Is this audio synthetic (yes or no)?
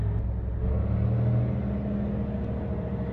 no